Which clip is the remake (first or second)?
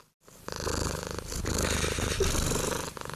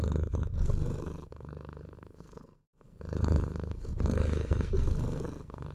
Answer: second